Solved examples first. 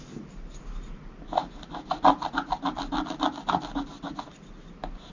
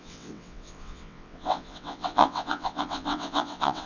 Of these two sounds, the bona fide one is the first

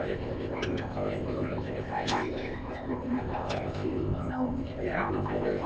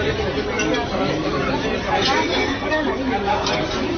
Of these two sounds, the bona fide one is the second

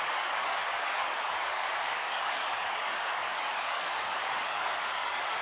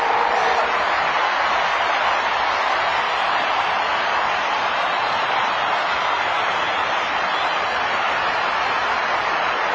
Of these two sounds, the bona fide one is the second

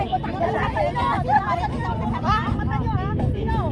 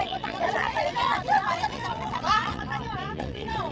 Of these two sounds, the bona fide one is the first